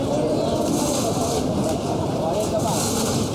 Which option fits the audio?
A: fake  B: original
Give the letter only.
B